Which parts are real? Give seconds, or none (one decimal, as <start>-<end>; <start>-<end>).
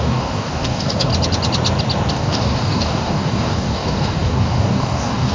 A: 1.1-2.1